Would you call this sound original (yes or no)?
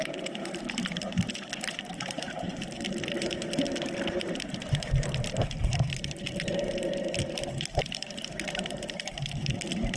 no